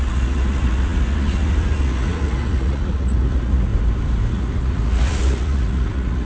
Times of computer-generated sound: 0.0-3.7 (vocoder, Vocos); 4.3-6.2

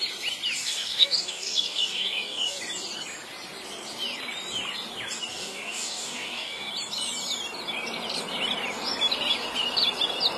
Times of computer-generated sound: 0.6-2.6 (codec, DAC); 5.3-6.7

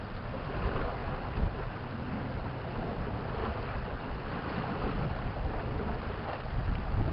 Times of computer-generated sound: none

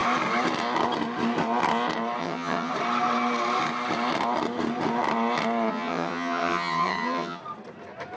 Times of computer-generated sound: 2.2-2.7 (vocoder, HiFi-GAN); 5.7-7.4

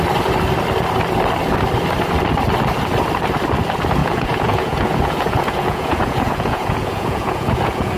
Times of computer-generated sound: 4.0-8.0 (vocoder, Vocos)